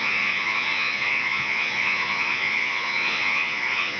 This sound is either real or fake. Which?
fake